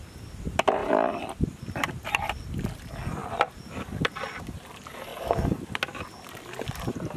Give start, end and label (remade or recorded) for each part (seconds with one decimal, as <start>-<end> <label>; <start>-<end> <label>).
0.0-7.2 recorded